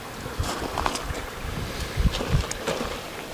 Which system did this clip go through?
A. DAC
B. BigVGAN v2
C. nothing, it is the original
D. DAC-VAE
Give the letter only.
C